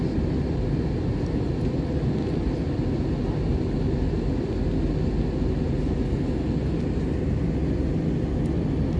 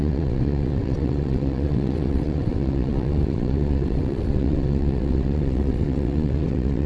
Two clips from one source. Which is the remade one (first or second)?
second